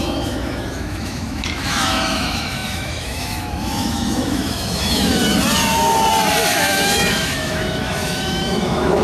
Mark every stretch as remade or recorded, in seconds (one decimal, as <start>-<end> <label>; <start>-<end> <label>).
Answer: 0.0-5.2 remade; 5.2-6.5 recorded; 6.5-9.0 remade